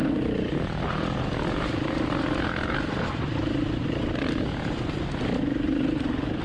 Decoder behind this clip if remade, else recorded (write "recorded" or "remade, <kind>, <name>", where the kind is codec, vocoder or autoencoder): recorded